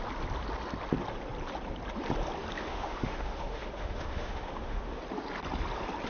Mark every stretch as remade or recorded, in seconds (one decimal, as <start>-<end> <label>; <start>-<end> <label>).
0.0-2.6 recorded; 2.6-5.0 remade; 5.0-6.1 recorded